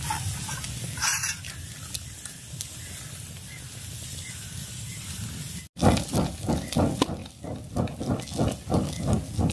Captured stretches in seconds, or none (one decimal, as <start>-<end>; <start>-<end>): 0.0-9.5